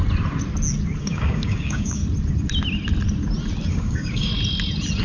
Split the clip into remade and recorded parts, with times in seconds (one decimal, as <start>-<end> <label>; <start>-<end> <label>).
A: 0.0-1.0 recorded; 1.0-2.0 remade; 2.0-3.7 recorded; 3.7-4.3 remade; 4.3-5.0 recorded